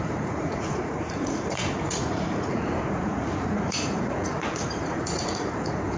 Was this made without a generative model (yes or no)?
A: no